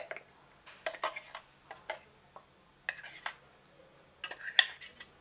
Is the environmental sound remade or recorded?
recorded